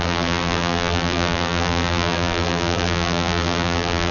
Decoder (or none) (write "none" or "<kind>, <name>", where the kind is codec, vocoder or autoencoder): vocoder, BigVGAN v2